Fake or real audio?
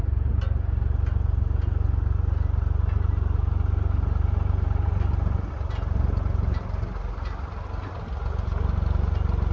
real